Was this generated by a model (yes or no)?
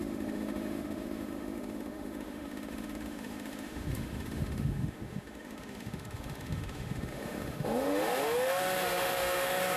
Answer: yes